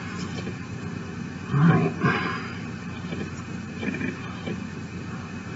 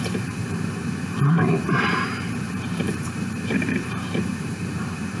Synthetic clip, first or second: second